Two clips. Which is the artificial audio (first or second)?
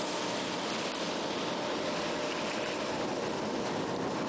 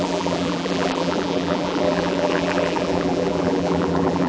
second